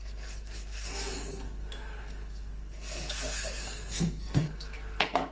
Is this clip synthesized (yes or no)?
yes